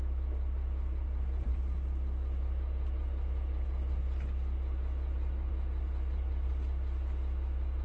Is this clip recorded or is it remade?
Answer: recorded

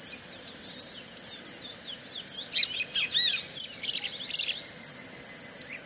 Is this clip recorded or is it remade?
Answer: recorded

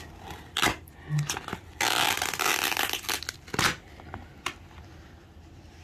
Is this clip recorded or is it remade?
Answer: recorded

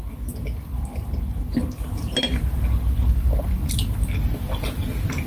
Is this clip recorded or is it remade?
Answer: recorded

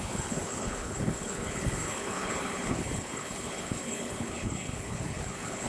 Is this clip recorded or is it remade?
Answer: remade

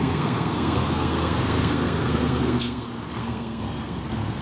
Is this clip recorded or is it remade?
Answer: remade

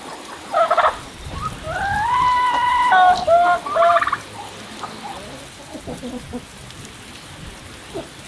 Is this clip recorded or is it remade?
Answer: recorded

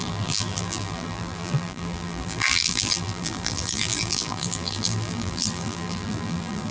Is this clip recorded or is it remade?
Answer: remade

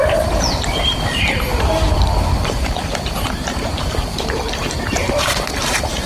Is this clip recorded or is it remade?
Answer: remade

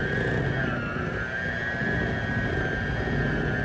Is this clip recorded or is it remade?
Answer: recorded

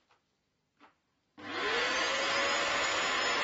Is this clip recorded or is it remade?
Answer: recorded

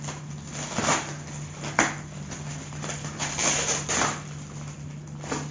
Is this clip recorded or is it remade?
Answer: recorded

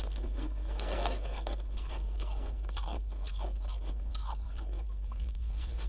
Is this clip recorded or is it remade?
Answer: remade